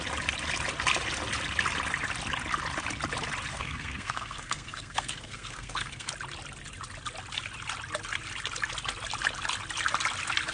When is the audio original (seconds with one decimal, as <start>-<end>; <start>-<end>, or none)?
0.0-3.5; 6.1-10.5